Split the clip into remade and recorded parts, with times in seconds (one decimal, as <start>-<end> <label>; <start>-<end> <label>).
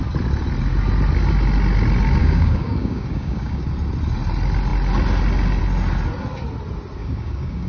0.0-2.2 recorded; 2.2-3.7 remade; 3.7-7.0 recorded; 7.0-7.7 remade